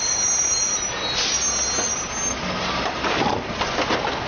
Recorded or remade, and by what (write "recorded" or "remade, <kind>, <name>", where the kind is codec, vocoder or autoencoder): recorded